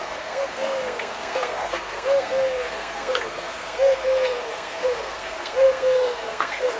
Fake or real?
fake